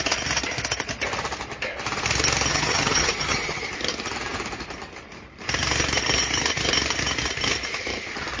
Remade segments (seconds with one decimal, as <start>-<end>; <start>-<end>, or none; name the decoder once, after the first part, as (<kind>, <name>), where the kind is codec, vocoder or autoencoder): 2.5-3.7 (vocoder, HiFi-GAN)